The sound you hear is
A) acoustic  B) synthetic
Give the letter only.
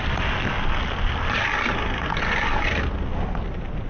A